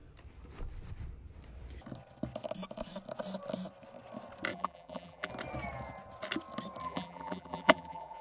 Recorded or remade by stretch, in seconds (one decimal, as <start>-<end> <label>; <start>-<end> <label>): 0.0-4.5 recorded; 4.5-5.3 remade; 5.3-6.8 recorded; 6.8-8.2 remade